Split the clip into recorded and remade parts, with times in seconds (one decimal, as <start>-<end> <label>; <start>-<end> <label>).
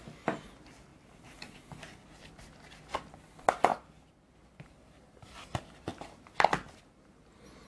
0.0-7.7 recorded